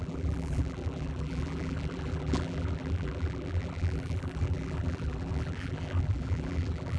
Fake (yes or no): yes